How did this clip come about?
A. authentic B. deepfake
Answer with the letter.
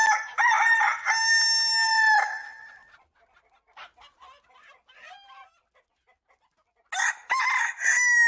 A